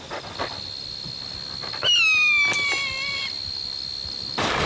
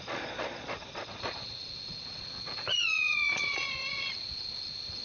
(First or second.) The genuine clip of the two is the first